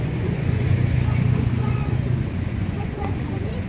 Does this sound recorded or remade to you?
remade